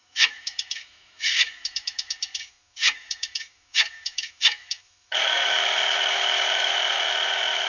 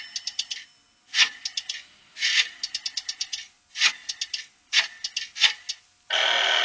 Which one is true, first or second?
second